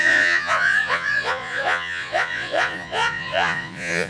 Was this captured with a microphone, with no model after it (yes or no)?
no